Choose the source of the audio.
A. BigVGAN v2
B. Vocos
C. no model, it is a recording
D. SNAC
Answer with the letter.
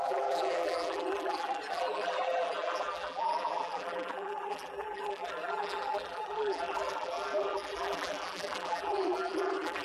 A